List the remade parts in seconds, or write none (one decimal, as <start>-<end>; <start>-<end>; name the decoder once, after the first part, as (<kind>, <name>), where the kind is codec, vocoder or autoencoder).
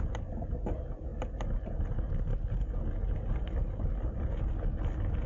none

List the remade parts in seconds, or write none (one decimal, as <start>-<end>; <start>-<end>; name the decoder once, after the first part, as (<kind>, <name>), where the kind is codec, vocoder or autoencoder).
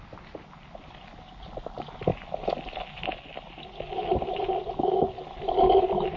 none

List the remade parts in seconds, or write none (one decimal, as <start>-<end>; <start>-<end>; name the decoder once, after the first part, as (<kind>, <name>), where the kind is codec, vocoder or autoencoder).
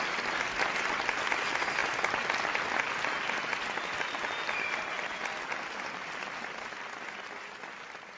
none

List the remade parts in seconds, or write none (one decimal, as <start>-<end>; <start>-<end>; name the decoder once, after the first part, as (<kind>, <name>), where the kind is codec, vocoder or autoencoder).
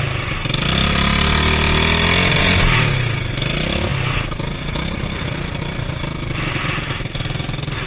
none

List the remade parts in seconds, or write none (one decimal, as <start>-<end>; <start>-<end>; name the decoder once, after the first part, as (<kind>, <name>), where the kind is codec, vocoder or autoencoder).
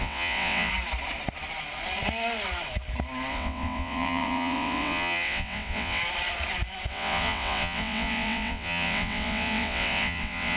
0.0-0.7 (vocoder, WaveNeXt); 3.3-6.0; 6.9-10.6